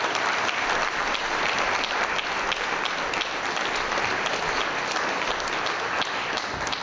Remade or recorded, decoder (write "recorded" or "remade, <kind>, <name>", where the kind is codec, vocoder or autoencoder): remade, vocoder, BigVGAN v2